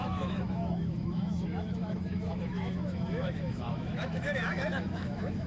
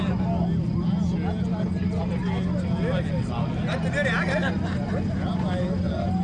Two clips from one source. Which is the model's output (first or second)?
first